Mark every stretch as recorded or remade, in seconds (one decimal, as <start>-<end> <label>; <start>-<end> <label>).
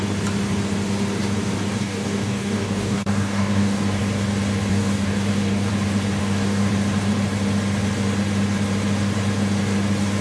0.0-1.7 recorded; 1.7-4.0 remade; 4.0-4.7 recorded; 4.7-5.7 remade; 5.7-6.2 recorded; 6.2-6.7 remade; 6.7-10.2 recorded